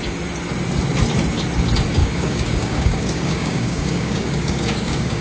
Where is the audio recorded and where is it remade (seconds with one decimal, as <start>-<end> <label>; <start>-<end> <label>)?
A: 0.0-2.0 recorded; 2.0-5.2 remade